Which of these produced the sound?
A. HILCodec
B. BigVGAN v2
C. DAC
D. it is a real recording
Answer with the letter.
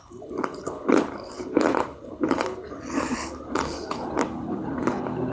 A